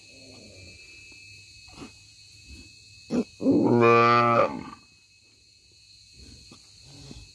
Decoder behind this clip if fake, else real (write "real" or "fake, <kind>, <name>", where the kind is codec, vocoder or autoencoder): real